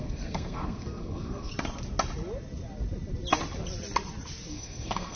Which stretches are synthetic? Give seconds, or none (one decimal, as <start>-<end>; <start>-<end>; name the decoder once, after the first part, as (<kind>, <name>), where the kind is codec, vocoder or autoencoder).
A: 0.0-1.5 (codec, SNAC); 4.5-5.2